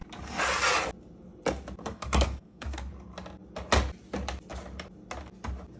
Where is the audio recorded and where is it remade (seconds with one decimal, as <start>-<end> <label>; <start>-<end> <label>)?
0.0-1.8 recorded; 1.8-2.9 remade; 2.9-5.8 recorded